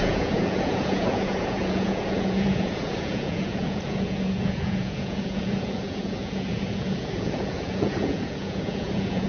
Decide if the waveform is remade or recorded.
remade